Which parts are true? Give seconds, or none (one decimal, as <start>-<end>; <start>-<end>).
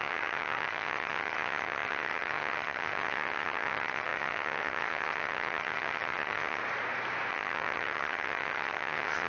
6.6-7.3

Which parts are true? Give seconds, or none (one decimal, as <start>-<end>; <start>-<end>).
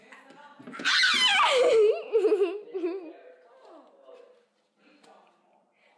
0.0-6.0